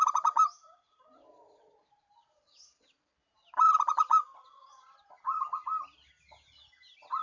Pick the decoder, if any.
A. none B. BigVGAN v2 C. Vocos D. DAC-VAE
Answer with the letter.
A